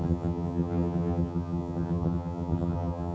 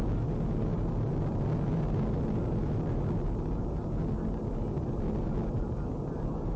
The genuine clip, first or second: second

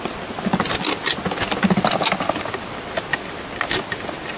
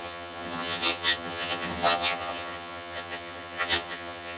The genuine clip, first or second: first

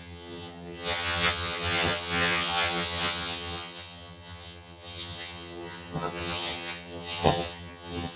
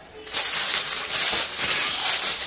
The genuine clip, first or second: second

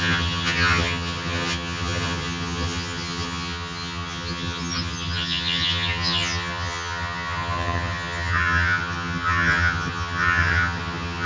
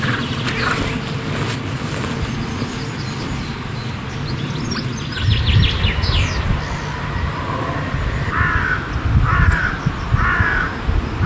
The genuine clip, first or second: second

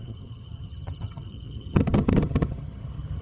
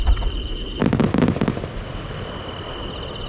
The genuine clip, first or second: second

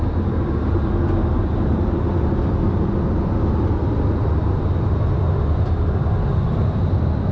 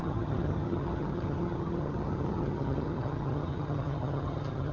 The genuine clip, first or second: first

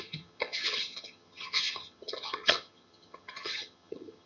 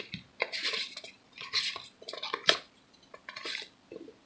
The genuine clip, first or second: second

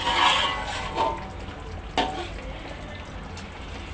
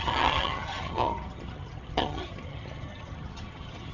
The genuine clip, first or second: first